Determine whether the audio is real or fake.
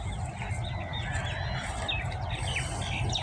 real